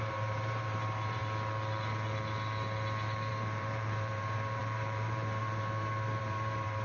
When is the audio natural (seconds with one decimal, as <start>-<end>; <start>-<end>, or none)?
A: 1.2-3.3